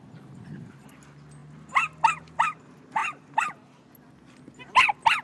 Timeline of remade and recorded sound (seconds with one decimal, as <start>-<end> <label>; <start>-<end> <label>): 0.0-5.2 recorded